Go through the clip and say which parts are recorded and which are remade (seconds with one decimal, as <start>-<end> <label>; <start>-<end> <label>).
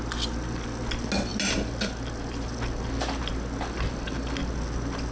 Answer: 0.0-5.1 recorded